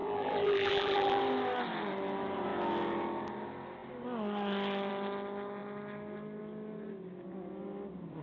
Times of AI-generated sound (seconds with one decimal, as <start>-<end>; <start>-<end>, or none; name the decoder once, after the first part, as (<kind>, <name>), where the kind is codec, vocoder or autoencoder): 0.0-1.2 (vocoder, BigVGAN v2)